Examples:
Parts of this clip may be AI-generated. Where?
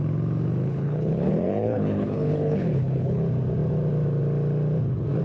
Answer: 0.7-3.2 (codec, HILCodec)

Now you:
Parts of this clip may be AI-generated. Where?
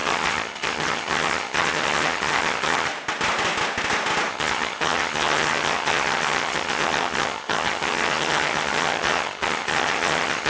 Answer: 0.0-2.9 (vocoder, HiFi-GAN); 4.3-10.5